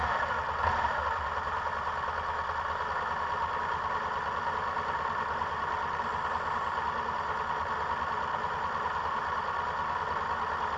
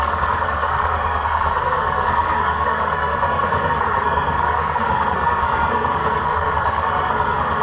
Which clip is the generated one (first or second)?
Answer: second